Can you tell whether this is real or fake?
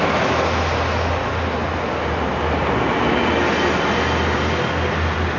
real